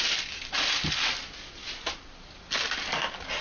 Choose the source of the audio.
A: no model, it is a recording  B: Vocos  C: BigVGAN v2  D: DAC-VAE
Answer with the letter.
A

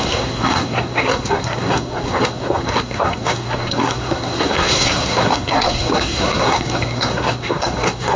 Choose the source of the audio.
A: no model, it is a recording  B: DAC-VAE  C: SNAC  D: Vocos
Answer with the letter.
C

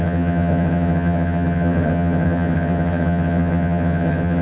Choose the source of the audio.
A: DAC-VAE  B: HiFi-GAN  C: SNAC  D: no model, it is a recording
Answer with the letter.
B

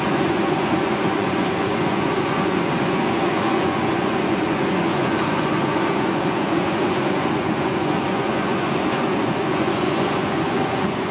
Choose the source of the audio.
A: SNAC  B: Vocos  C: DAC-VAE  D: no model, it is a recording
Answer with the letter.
B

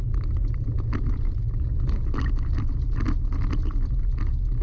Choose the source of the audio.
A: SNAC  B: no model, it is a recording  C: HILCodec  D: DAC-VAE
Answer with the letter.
B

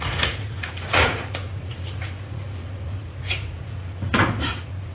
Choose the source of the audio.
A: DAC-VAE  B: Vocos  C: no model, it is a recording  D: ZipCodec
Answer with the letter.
B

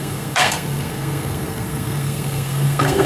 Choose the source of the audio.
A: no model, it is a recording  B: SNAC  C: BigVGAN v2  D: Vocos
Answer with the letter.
B